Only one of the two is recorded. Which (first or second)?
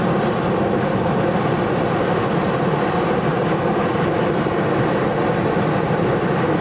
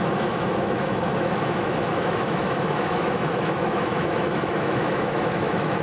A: first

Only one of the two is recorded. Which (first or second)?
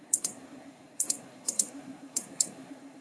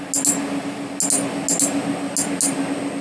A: second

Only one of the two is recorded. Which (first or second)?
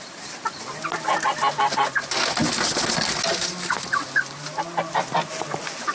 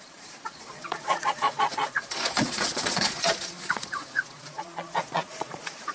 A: first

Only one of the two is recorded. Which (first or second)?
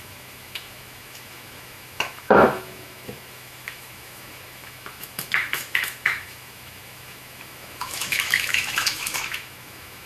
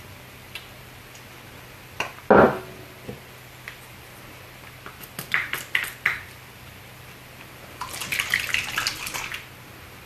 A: second